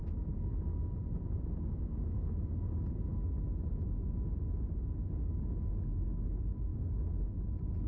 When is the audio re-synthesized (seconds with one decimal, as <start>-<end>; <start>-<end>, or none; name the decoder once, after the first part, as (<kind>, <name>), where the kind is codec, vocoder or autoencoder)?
none